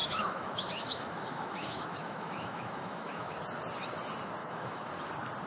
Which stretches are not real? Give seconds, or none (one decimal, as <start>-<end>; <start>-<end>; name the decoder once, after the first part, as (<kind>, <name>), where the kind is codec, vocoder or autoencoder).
0.0-3.3 (autoencoder, DAC-VAE); 4.4-4.9